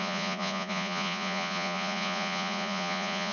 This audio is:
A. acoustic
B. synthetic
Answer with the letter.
B